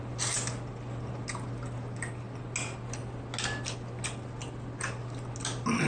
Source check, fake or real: real